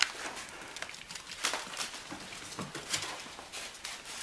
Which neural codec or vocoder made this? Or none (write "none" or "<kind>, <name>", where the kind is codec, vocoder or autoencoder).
none